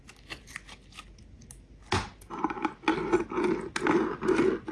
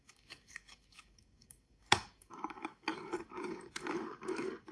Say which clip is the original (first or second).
first